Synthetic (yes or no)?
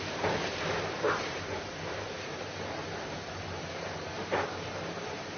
yes